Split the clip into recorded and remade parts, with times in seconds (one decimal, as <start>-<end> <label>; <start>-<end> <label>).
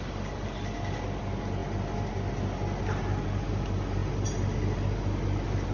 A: 0.0-5.7 recorded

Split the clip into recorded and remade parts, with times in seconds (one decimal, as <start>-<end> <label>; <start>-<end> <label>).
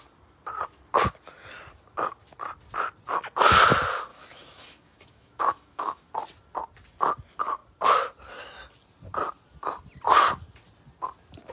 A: 0.0-4.1 recorded; 4.1-6.1 remade; 6.1-11.5 recorded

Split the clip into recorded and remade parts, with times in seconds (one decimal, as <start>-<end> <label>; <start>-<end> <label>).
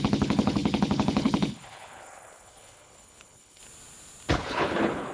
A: 0.0-3.6 remade; 3.6-4.3 recorded; 4.3-5.1 remade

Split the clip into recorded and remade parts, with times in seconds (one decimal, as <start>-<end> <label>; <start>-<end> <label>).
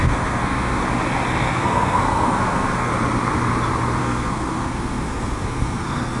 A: 0.0-0.8 remade; 0.8-1.5 recorded; 1.5-2.9 remade; 2.9-4.0 recorded; 4.0-6.2 remade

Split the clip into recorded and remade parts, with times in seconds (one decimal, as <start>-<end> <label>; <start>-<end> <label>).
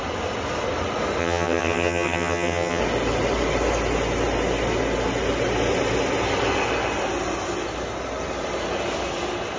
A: 0.0-1.2 recorded; 1.2-2.8 remade; 2.8-9.6 recorded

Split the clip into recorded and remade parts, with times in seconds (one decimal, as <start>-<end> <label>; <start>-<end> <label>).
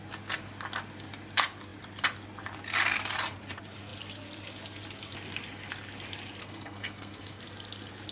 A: 0.0-6.4 recorded; 6.4-7.4 remade; 7.4-8.1 recorded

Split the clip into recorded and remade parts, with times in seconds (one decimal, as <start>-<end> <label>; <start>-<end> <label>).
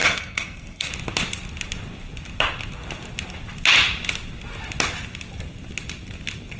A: 0.0-0.9 remade; 0.9-6.6 recorded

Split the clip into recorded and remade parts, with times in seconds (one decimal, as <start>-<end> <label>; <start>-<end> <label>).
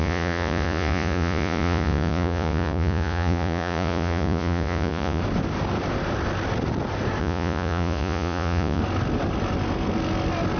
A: 0.0-5.2 remade; 5.2-7.2 recorded; 7.2-8.8 remade; 8.8-10.6 recorded